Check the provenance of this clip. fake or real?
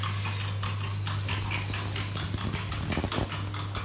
real